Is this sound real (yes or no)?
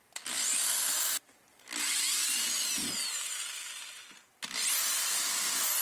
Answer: yes